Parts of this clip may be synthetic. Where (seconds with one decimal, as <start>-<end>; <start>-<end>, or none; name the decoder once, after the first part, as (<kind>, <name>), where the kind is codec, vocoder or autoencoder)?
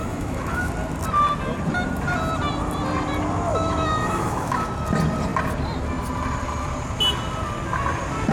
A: 0.0-0.7 (autoencoder, DAC-VAE); 3.5-4.7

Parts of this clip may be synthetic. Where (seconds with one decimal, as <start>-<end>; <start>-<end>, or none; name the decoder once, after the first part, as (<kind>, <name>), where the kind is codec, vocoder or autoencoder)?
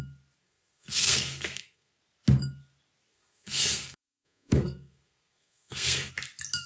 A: 0.4-1.9 (codec, SNAC); 3.1-6.1